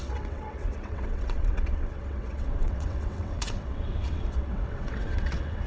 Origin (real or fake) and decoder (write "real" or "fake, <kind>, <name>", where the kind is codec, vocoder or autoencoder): fake, vocoder, WaveNeXt